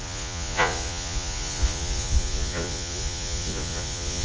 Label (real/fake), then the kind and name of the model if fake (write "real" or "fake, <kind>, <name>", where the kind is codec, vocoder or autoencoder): fake, vocoder, Vocos